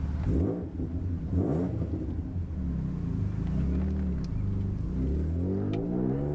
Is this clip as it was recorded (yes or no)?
yes